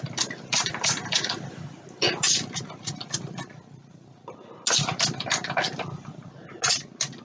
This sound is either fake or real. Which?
real